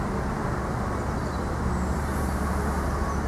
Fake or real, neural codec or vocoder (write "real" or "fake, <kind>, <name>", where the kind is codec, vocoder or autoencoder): real